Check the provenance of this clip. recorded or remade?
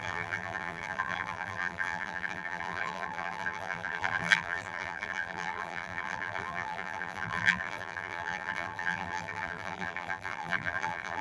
remade